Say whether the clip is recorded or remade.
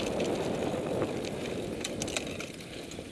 recorded